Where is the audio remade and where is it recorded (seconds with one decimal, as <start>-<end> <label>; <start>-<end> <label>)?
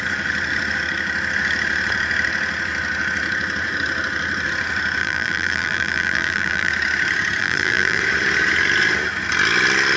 0.0-5.0 recorded; 5.0-6.7 remade; 6.7-7.4 recorded; 7.4-8.0 remade; 8.0-10.0 recorded